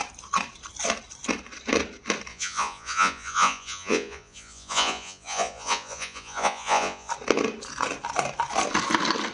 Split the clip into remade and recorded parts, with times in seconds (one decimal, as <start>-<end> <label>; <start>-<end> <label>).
0.0-2.3 recorded; 2.3-7.1 remade; 7.1-9.3 recorded